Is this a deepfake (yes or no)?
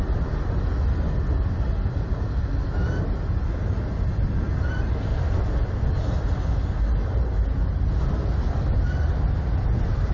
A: no